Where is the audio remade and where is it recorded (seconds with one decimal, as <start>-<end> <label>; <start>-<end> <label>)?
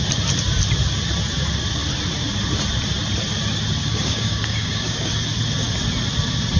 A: 0.0-3.8 recorded; 3.8-5.1 remade; 5.1-6.6 recorded